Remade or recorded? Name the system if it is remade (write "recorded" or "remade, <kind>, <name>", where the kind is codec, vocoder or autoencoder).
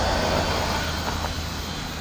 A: recorded